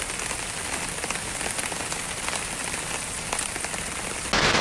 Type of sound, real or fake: real